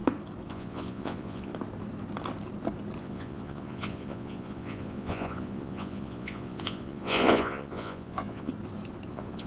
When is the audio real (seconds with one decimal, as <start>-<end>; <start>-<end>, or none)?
0.0-0.5; 1.5-3.0; 8.5-9.1